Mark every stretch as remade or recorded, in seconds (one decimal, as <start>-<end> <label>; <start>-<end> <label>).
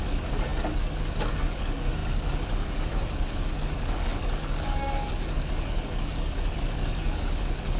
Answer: 0.0-7.8 remade